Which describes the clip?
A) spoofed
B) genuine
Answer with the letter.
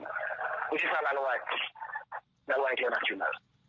B